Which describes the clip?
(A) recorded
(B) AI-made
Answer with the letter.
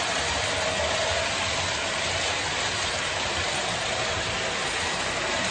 A